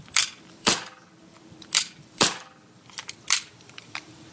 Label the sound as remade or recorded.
remade